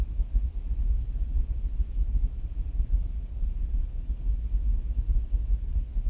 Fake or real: real